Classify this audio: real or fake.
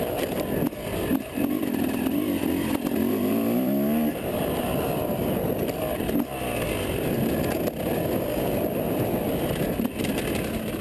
real